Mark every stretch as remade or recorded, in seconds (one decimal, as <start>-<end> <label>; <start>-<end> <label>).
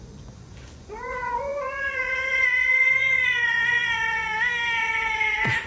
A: 0.0-4.3 remade; 4.3-4.8 recorded; 4.8-5.7 remade